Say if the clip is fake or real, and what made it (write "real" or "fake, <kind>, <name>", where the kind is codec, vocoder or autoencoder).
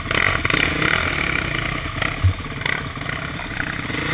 real